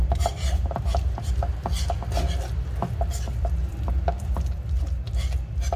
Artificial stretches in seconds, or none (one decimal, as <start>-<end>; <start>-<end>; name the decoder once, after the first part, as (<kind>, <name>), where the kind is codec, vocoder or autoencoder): 0.0-1.0 (vocoder, BigVGAN v2)